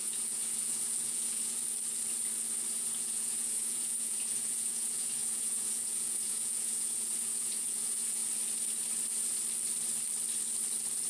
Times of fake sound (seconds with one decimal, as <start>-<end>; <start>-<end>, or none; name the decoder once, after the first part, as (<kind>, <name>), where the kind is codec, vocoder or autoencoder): 0.0-1.6 (vocoder, Vocos); 2.7-8.2